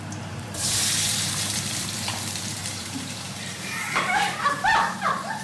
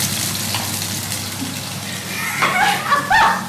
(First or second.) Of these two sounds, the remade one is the first